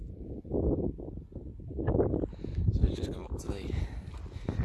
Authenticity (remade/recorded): recorded